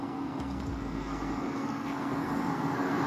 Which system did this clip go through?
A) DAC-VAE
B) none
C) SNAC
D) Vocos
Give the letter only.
C